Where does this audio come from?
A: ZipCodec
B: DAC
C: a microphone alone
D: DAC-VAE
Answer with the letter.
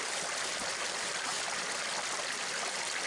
C